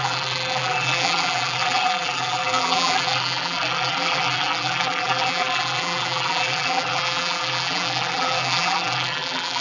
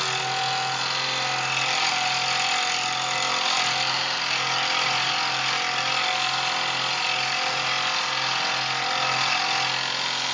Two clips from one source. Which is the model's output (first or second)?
first